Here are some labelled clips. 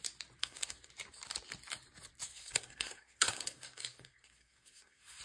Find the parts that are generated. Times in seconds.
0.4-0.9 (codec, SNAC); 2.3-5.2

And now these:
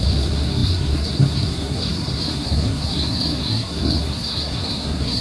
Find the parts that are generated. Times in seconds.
0.0-5.2 (codec, SNAC)